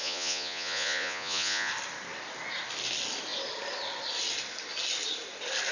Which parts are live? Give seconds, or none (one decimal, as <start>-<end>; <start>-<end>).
1.7-5.7